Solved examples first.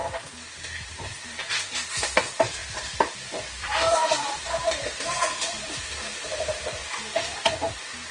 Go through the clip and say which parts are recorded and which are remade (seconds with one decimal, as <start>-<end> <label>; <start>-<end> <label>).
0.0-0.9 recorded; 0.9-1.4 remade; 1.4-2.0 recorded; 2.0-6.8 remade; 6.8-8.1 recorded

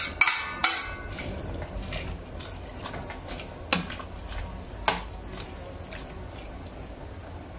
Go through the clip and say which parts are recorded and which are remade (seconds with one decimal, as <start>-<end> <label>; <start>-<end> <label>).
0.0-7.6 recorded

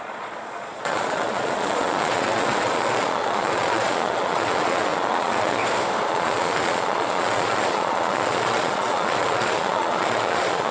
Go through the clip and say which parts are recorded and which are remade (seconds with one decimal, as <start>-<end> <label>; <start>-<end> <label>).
0.0-5.6 remade; 5.6-6.1 recorded; 6.1-10.7 remade